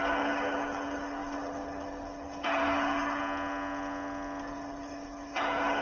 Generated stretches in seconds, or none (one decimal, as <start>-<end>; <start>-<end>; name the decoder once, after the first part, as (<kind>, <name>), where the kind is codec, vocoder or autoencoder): 0.0-3.2 (codec, HILCodec); 4.4-5.8

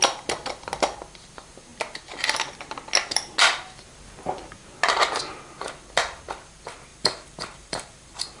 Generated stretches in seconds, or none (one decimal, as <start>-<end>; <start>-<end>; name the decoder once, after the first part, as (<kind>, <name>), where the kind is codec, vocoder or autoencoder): 6.9-8.4 (vocoder, BigVGAN v2)

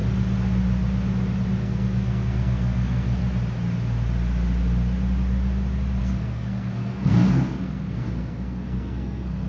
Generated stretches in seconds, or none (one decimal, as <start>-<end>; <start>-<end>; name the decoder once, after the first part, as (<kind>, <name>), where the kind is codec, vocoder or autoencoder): 1.6-3.2 (codec, SNAC); 6.0-9.5

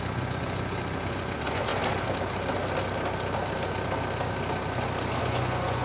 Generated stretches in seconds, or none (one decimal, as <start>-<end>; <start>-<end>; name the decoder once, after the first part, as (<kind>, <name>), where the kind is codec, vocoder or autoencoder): 0.0-1.7 (vocoder, Vocos); 5.2-5.8

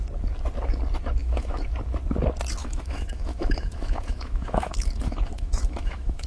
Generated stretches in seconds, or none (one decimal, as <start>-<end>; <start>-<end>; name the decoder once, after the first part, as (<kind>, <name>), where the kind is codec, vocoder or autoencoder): 1.2-1.7 (autoencoder, DAC-VAE); 2.6-6.3

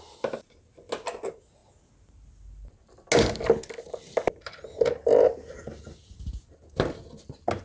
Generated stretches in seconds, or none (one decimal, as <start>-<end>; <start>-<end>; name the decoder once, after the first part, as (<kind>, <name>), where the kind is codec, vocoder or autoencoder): none

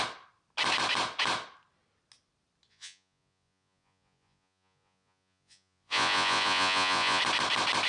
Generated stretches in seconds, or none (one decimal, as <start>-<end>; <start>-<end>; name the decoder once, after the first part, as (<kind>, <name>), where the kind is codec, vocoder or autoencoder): 2.7-7.2 (vocoder, Vocos)